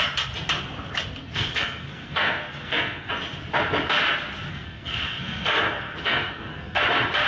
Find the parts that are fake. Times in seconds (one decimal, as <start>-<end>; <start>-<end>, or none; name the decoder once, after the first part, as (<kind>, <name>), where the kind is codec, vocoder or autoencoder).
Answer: 1.2-3.1 (codec, SNAC); 4.5-6.8